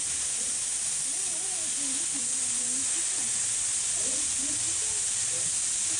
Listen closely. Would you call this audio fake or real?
real